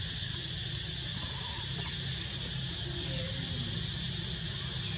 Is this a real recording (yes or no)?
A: yes